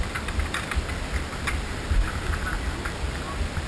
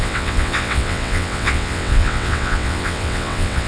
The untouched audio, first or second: first